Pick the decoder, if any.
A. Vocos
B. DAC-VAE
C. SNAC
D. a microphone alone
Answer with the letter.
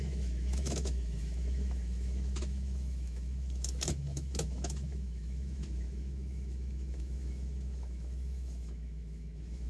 B